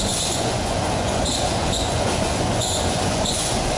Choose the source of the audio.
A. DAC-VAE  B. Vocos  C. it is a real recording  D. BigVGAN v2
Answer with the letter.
B